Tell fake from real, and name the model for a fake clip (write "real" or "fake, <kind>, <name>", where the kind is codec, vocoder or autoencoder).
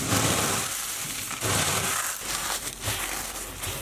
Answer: real